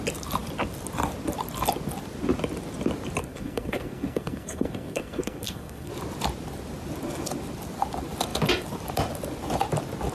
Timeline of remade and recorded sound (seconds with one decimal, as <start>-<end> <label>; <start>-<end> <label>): 0.0-3.2 recorded; 3.2-5.9 remade; 5.9-10.1 recorded